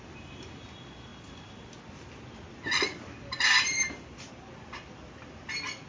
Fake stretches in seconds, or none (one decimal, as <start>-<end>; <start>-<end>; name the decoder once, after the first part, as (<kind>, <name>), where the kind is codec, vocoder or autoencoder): none